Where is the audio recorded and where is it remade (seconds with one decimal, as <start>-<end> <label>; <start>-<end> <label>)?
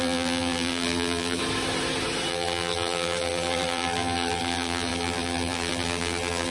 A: 0.0-1.4 remade; 1.4-2.3 recorded; 2.3-6.5 remade